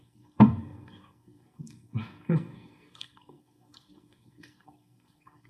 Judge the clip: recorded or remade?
remade